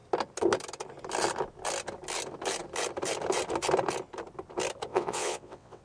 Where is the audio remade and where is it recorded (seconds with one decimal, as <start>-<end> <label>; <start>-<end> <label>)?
0.0-4.9 recorded; 4.9-5.8 remade